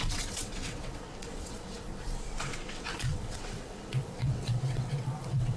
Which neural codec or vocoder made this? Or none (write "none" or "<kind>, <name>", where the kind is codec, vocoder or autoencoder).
vocoder, WaveNeXt